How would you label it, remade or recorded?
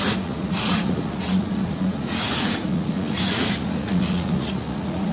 remade